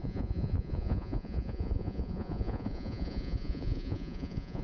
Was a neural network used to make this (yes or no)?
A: yes